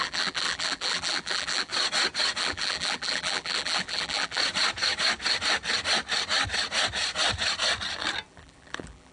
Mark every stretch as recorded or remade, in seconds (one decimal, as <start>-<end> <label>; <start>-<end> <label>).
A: 0.0-1.7 remade; 1.7-2.4 recorded; 2.4-4.4 remade; 4.4-8.3 recorded; 8.3-9.1 remade